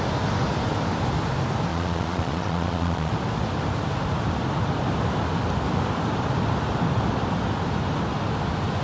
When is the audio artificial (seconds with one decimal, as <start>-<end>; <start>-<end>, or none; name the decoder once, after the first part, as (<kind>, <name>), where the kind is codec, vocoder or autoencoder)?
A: 1.7-3.1 (vocoder, Vocos)